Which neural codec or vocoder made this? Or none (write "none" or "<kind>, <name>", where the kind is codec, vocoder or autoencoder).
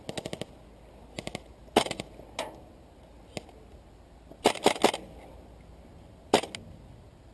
none